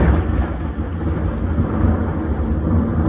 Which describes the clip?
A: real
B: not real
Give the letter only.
A